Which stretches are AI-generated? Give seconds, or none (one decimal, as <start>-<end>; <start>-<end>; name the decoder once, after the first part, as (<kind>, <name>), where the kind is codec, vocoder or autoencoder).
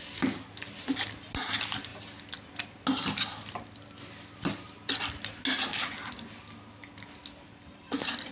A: none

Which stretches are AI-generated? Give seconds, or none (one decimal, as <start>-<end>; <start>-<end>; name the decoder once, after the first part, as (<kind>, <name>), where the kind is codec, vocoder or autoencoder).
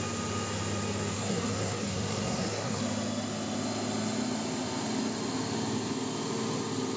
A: 1.1-2.8 (codec, SNAC)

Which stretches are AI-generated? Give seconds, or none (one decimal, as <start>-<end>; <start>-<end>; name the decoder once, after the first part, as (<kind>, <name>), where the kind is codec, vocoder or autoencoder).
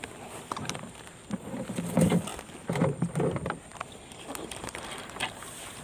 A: none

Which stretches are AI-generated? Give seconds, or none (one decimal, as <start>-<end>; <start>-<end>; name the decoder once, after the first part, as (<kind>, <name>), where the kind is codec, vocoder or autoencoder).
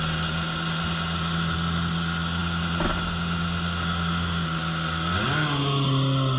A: none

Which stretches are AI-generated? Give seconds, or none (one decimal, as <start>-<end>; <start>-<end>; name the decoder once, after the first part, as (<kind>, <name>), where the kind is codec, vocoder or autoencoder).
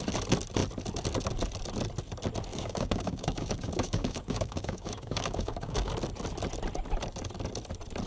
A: 2.5-5.9 (codec, DAC)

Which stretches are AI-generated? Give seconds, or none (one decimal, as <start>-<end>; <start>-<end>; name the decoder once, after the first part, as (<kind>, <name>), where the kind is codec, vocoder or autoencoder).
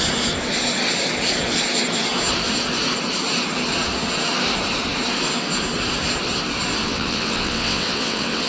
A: 6.8-8.5 (vocoder, WaveNeXt)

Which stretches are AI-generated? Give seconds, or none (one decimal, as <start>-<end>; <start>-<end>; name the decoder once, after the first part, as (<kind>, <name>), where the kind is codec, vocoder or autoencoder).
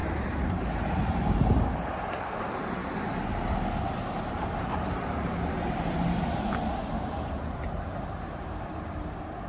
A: 0.0-2.8 (vocoder, BigVGAN v2); 4.3-9.5